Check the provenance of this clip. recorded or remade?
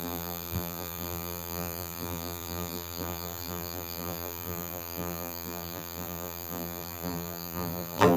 remade